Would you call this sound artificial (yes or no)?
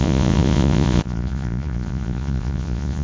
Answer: yes